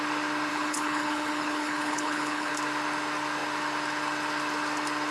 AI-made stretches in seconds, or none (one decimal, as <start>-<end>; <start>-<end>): 0.5-2.5